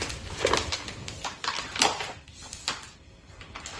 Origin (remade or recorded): recorded